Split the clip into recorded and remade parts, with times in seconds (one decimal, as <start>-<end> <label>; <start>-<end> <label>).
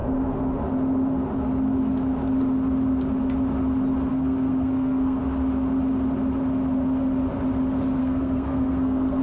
0.0-4.1 recorded; 4.1-5.2 remade; 5.2-8.0 recorded; 8.0-9.2 remade